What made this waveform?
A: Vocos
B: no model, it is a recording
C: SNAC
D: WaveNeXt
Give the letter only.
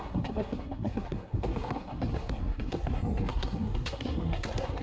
C